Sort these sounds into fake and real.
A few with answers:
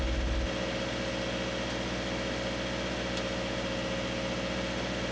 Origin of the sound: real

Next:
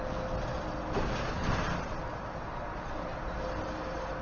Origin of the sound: real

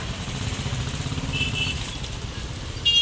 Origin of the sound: real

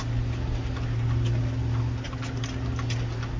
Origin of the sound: real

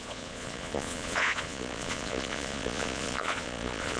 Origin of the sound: fake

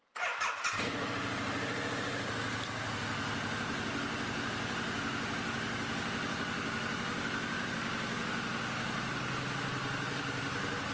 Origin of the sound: real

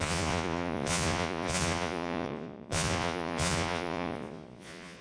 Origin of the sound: fake